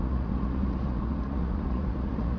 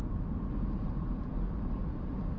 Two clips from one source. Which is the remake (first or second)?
first